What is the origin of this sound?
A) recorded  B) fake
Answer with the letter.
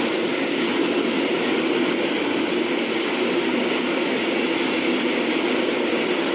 A